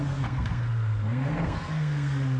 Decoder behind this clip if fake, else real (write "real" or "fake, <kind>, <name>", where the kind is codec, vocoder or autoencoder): fake, codec, SNAC